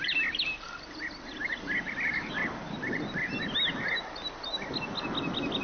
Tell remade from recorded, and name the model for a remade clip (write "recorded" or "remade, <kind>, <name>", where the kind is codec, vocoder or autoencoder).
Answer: recorded